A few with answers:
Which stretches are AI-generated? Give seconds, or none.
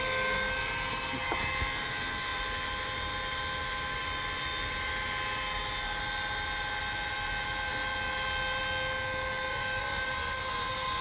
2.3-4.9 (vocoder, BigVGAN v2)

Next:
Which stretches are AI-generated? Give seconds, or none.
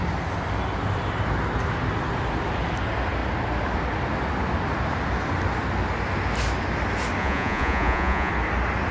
7.2-8.3 (vocoder, Vocos)